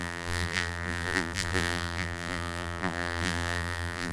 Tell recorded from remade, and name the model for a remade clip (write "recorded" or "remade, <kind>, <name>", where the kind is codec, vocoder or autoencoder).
remade, vocoder, BigVGAN v2